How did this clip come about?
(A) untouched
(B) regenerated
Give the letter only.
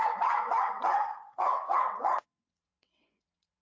B